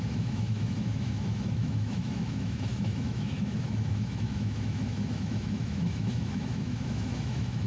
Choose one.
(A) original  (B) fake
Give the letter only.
B